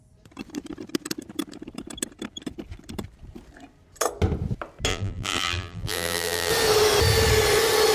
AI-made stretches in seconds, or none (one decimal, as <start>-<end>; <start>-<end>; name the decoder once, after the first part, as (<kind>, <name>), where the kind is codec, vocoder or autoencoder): 4.9-6.5 (vocoder, BigVGAN v2)